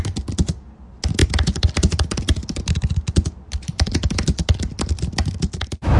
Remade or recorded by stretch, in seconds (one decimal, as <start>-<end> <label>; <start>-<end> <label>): 0.0-6.0 recorded